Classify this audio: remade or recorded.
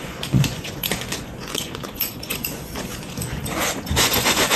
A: remade